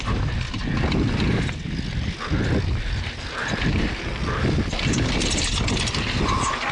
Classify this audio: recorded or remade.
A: recorded